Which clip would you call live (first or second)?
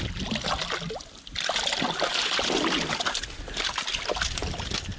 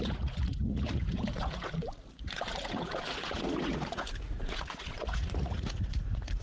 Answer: first